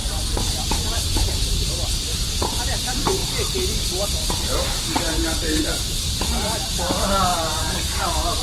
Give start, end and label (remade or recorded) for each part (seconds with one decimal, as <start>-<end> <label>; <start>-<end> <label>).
0.0-8.4 remade